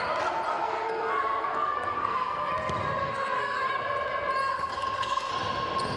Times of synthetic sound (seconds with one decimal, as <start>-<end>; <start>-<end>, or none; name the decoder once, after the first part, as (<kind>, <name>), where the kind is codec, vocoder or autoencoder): 0.5-2.5 (codec, SNAC); 3.0-3.6; 4.4-5.3